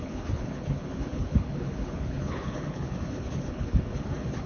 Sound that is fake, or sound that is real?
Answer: fake